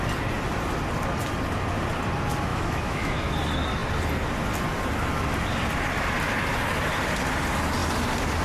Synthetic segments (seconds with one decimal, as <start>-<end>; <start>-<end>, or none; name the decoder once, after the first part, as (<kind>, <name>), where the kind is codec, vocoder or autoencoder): 2.5-3.3 (autoencoder, DAC-VAE)